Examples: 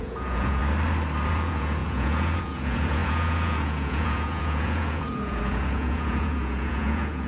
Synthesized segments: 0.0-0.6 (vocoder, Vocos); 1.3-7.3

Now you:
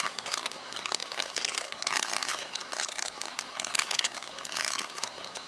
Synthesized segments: 0.0-5.5 (codec, SNAC)

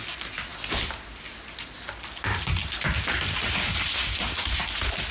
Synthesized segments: none